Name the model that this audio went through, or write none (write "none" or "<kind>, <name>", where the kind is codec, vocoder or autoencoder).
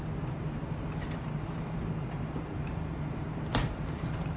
vocoder, BigVGAN v2